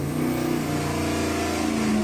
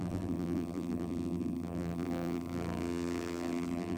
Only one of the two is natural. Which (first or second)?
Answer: first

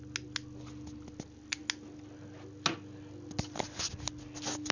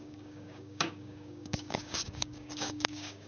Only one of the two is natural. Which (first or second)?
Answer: first